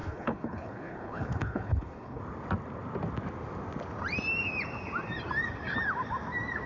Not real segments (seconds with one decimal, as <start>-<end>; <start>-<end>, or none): 0.0-2.2